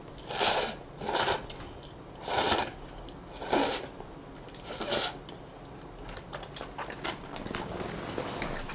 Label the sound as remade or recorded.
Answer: recorded